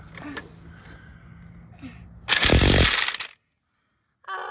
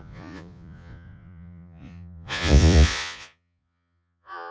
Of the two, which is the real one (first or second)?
first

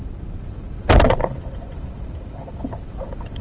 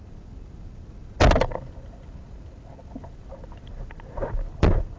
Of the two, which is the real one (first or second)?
second